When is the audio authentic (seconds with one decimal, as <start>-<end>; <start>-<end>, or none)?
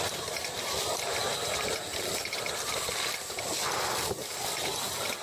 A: 0.0-5.2